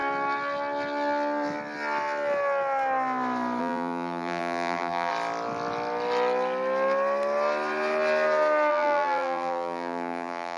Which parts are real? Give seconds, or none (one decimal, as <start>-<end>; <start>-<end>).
0.0-3.6; 5.1-8.7